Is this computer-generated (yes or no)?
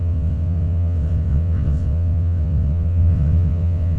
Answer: yes